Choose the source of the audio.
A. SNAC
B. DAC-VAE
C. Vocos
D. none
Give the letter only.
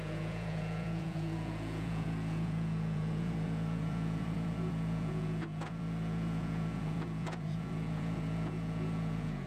C